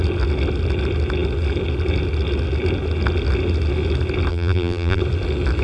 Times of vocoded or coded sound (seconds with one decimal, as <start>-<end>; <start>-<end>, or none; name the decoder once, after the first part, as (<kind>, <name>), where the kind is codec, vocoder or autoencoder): 4.3-5.0 (vocoder, BigVGAN v2)